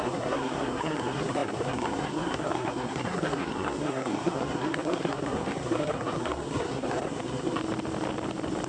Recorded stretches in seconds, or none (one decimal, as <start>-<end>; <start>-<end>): 7.6-8.7